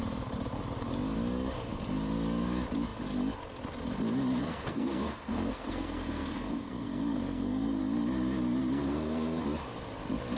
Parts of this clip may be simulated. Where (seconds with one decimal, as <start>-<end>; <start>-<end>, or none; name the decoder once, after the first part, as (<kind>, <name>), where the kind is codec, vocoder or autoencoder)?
4.4-7.8 (codec, SNAC); 8.6-9.4